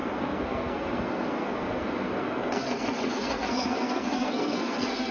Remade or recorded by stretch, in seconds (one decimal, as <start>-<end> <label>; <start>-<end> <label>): 0.0-5.1 remade